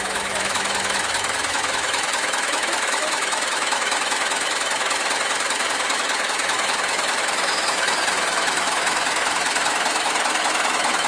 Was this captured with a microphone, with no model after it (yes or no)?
no